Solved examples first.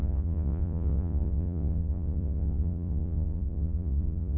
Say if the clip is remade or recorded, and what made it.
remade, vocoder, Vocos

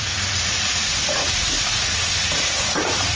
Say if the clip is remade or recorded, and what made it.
remade, vocoder, Vocos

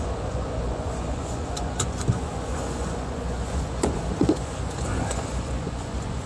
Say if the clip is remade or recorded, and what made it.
remade, vocoder, Vocos